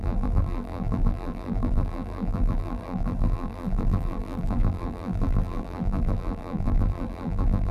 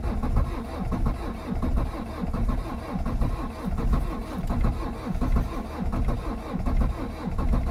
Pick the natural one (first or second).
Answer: second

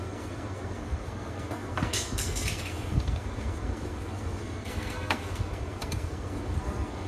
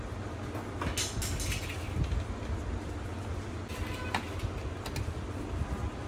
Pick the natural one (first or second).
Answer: second